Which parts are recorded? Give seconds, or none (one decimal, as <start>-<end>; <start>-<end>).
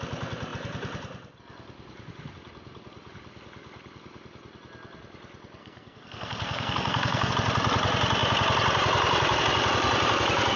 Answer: 0.0-5.6; 7.3-10.6